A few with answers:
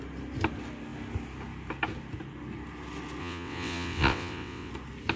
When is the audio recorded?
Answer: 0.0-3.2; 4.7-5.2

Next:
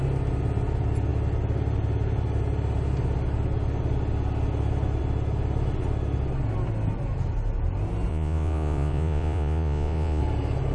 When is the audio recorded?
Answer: 0.0-8.1; 10.2-10.7

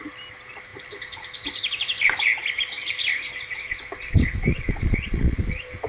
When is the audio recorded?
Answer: 0.0-4.5; 5.4-5.9

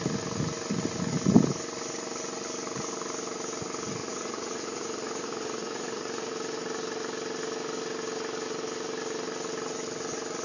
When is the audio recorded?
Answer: 0.0-4.0; 6.3-10.4

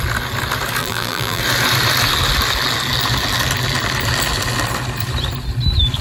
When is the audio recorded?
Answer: 0.0-0.8; 1.4-6.0

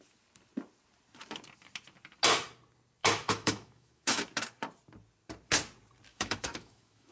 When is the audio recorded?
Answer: 0.0-3.0; 4.2-6.1

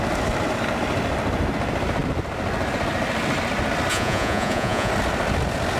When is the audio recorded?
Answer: 0.0-3.9; 4.9-5.8